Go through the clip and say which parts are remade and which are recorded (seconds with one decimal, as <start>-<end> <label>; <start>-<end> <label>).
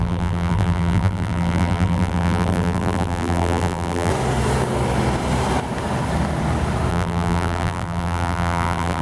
0.0-4.1 remade; 4.1-6.9 recorded; 6.9-9.0 remade